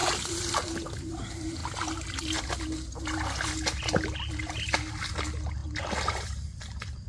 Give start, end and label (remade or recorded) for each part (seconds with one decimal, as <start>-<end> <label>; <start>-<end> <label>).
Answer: 0.0-1.1 remade; 1.1-7.1 recorded